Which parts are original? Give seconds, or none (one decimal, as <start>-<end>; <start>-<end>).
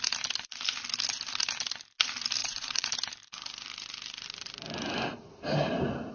0.0-2.4; 2.9-6.1